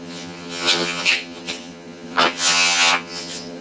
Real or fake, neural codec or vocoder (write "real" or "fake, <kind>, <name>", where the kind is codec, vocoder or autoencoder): fake, vocoder, HiFi-GAN